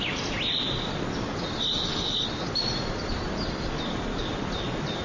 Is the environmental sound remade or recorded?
recorded